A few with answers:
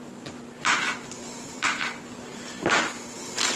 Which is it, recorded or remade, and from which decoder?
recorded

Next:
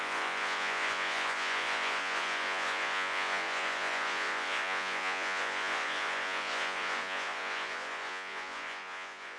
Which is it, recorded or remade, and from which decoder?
remade, vocoder, Vocos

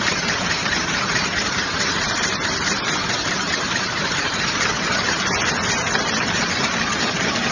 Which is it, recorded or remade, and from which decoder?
remade, vocoder, BigVGAN v2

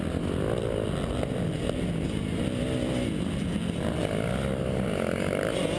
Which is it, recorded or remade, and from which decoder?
recorded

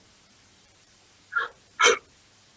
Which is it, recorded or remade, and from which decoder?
remade, vocoder, BigVGAN v2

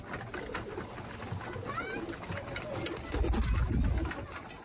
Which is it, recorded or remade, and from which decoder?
recorded